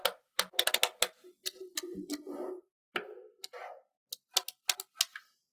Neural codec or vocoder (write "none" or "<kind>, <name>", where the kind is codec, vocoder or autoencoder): none